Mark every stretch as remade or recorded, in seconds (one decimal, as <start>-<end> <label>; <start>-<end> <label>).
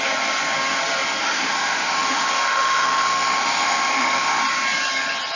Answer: 0.0-1.2 recorded; 1.2-4.4 remade; 4.4-5.4 recorded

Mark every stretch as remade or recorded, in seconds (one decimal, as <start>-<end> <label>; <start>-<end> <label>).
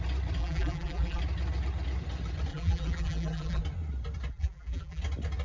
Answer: 0.0-0.4 recorded; 0.4-1.2 remade; 1.2-2.5 recorded; 2.5-3.6 remade; 3.6-4.3 recorded; 4.3-5.0 remade; 5.0-5.4 recorded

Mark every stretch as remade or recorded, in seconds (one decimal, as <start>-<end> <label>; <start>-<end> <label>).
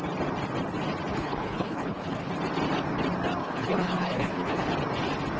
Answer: 0.0-1.1 recorded; 1.1-2.3 remade; 2.3-3.4 recorded; 3.4-4.7 remade; 4.7-5.4 recorded